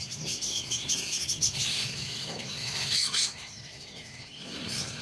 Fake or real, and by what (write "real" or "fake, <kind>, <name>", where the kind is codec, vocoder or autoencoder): fake, codec, SNAC